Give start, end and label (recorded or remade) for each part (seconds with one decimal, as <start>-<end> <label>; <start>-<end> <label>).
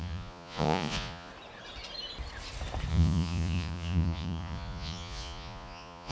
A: 0.0-1.3 remade; 1.3-2.9 recorded; 2.9-6.1 remade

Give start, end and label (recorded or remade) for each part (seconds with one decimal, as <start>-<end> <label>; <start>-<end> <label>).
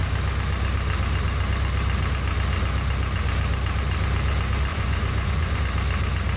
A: 0.0-4.7 recorded; 4.7-5.6 remade; 5.6-6.4 recorded